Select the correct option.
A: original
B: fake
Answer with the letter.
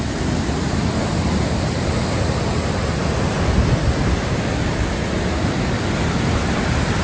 A